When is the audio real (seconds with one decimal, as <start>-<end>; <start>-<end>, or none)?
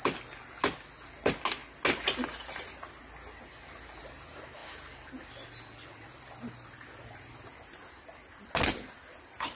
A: 0.0-9.6